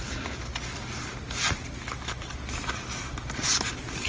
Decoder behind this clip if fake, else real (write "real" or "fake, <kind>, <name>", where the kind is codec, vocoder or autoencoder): real